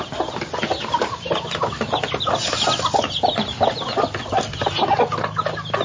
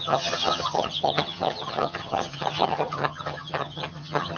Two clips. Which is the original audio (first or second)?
first